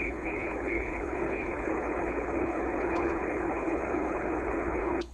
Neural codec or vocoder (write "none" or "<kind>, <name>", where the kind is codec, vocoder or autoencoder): codec, HILCodec